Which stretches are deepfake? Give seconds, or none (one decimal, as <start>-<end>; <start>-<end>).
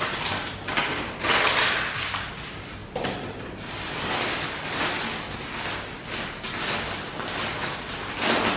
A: none